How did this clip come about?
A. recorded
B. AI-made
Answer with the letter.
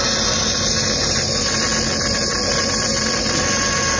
A